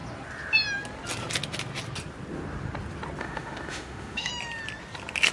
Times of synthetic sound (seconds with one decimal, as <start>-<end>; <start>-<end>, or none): 3.2-4.3